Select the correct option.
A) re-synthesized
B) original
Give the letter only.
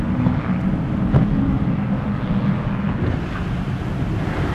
B